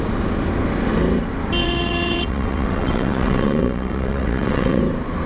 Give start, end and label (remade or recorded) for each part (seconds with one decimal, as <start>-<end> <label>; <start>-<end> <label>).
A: 0.0-1.6 recorded; 1.6-4.8 remade; 4.8-5.3 recorded